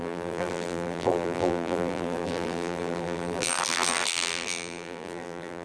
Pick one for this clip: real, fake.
fake